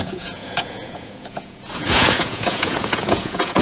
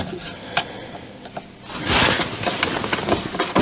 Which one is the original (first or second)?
second